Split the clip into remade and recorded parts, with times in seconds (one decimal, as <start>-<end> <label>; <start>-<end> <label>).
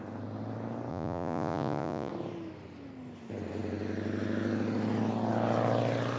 0.0-0.9 recorded; 0.9-2.1 remade; 2.1-6.2 recorded